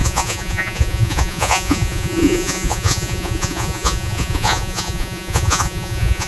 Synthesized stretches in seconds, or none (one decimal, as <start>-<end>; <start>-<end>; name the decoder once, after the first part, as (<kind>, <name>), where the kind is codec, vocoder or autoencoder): 0.0-6.3 (vocoder, Vocos)